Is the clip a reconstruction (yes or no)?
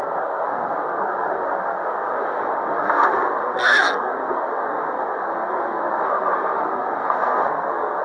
yes